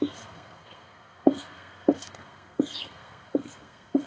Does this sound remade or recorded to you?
remade